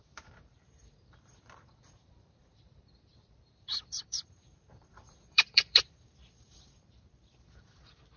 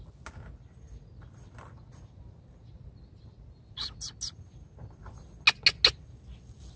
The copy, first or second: first